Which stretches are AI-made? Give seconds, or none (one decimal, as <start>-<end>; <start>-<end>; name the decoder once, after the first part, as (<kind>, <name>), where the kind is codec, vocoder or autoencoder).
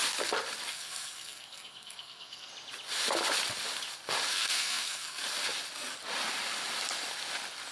0.7-2.5 (codec, SNAC); 4.3-5.2